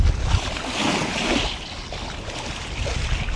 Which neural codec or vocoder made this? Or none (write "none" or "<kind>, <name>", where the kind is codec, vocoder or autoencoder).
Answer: none